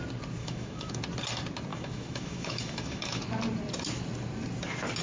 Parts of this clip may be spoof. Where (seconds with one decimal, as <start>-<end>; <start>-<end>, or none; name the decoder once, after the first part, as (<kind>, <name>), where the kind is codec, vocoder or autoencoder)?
0.4-1.0 (autoencoder, DAC-VAE); 1.7-3.2